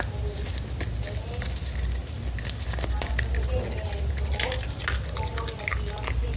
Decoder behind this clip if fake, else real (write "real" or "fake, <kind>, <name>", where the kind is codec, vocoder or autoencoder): real